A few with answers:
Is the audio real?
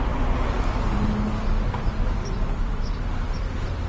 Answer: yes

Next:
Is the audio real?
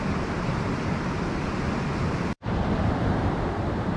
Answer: no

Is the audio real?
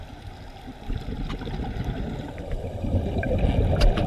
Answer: no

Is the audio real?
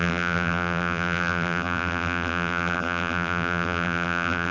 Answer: no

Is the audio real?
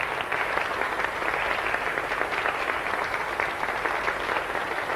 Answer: yes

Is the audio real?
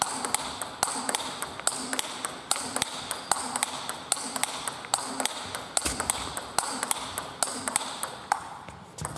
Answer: yes